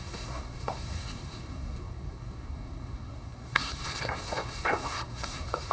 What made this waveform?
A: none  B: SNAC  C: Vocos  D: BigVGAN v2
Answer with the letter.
B